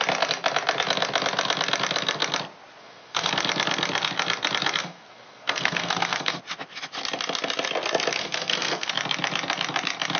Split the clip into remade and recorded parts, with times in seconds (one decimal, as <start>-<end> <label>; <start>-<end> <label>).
0.0-2.8 recorded; 2.8-3.3 remade; 3.3-4.8 recorded; 4.8-6.4 remade; 6.4-8.2 recorded; 8.2-8.9 remade; 8.9-10.2 recorded

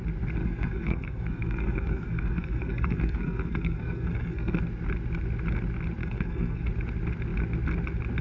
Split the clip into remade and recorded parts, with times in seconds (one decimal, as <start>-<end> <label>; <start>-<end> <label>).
0.0-0.4 recorded; 0.4-4.6 remade; 4.6-6.0 recorded; 6.0-6.7 remade; 6.7-8.2 recorded

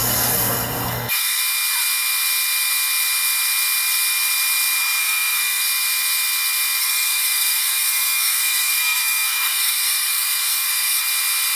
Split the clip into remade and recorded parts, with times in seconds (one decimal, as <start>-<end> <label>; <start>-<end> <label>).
0.0-1.4 remade; 1.4-5.0 recorded; 5.0-5.6 remade; 5.6-6.8 recorded; 6.8-11.0 remade; 11.0-11.6 recorded

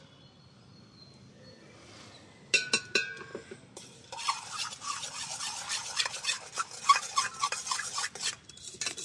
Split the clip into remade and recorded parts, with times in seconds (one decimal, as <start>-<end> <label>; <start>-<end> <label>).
0.0-9.0 recorded

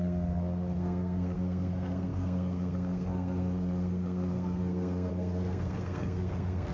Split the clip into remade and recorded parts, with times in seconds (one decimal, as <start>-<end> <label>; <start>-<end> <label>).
0.0-6.7 remade

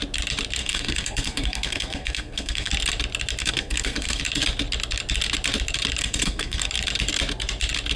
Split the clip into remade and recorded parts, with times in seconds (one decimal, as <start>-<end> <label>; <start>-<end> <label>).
0.0-0.6 recorded; 0.6-2.7 remade; 2.7-3.4 recorded; 3.4-4.2 remade; 4.2-6.0 recorded; 6.0-6.7 remade; 6.7-8.0 recorded